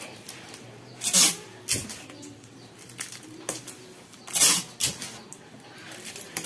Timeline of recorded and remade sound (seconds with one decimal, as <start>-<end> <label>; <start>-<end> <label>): 0.0-6.5 recorded

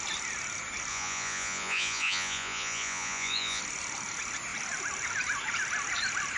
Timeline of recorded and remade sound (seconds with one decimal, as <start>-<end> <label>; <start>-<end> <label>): 0.0-0.9 recorded; 0.9-3.6 remade; 3.6-6.4 recorded

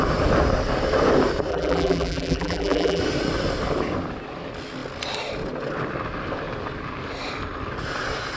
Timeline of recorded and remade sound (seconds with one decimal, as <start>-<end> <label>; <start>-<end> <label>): 0.0-1.5 recorded; 1.5-3.0 remade; 3.0-8.4 recorded

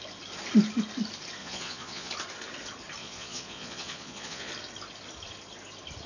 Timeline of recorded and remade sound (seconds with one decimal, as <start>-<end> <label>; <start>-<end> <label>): 0.0-1.4 recorded; 1.4-2.1 remade; 2.1-3.0 recorded; 3.0-4.5 remade; 4.5-6.1 recorded

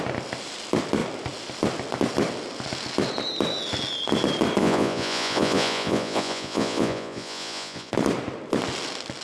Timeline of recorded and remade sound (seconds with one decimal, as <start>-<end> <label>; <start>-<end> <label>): 0.0-4.6 recorded; 4.6-7.9 remade; 7.9-9.2 recorded